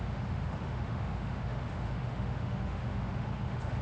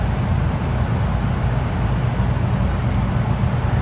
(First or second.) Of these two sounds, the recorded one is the second